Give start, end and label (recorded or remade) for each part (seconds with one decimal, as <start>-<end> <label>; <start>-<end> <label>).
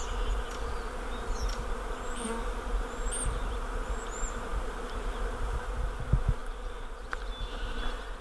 0.0-8.2 recorded